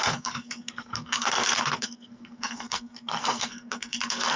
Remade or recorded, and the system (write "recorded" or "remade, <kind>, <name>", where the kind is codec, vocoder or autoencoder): remade, codec, SNAC